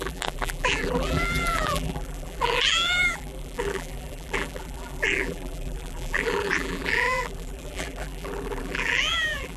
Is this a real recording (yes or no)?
no